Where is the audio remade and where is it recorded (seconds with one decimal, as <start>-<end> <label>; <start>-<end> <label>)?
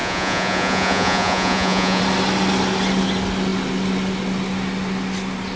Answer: 0.0-2.0 remade; 2.0-5.6 recorded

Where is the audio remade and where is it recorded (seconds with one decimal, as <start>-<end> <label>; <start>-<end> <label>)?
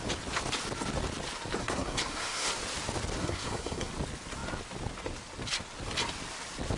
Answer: 0.0-1.6 recorded; 1.6-2.5 remade; 2.5-3.2 recorded; 3.2-3.9 remade; 3.9-6.8 recorded